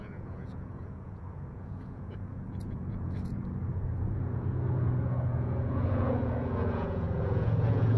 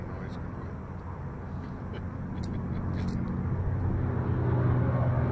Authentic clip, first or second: second